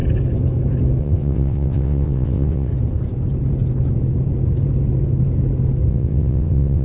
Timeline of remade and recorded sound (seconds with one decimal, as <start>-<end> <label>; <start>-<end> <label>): 0.0-1.0 recorded; 1.0-2.7 remade; 2.7-5.9 recorded; 5.9-6.8 remade

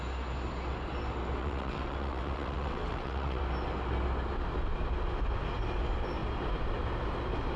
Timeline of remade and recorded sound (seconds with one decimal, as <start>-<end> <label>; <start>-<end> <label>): 0.0-1.4 recorded; 1.4-3.4 remade; 3.4-7.6 recorded